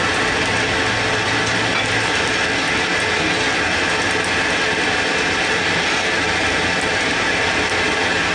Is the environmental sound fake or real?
real